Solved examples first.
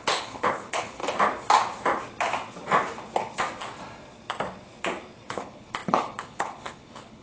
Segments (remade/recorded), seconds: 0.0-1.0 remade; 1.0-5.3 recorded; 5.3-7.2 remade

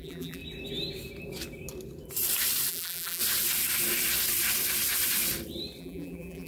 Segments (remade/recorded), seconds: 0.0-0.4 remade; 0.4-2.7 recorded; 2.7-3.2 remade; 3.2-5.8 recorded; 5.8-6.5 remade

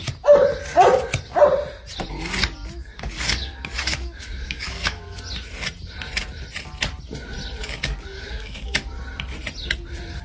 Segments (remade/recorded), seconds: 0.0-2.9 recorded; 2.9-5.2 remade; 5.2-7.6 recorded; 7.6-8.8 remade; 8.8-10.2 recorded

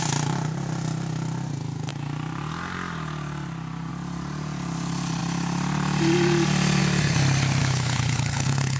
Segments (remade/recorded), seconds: 0.0-7.6 recorded; 7.6-8.8 remade

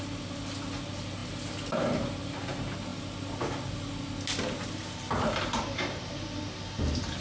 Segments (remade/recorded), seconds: 0.0-7.2 recorded